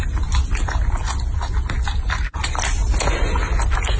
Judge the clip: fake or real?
real